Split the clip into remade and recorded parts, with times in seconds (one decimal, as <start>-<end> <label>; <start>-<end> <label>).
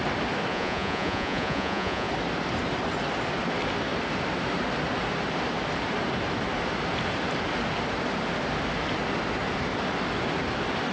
0.0-0.5 recorded; 0.5-2.1 remade; 2.1-10.9 recorded